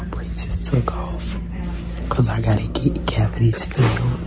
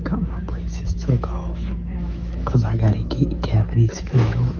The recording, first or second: first